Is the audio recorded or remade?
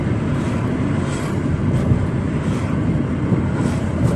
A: recorded